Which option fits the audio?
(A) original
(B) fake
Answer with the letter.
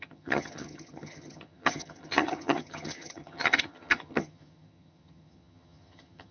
B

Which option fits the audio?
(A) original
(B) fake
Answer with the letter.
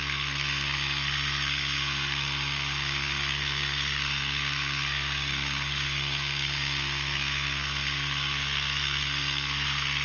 B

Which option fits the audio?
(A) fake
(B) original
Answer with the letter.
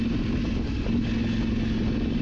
B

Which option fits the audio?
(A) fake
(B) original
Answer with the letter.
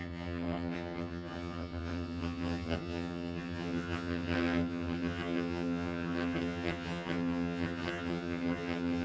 A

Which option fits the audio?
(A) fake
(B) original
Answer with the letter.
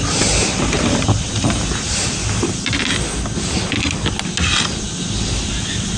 B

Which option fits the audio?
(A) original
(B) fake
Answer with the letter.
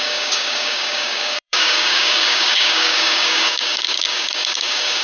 B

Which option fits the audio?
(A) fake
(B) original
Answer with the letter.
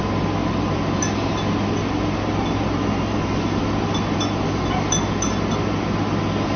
B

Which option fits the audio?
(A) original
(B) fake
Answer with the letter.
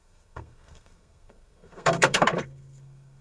B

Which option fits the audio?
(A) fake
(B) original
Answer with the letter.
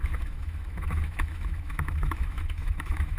A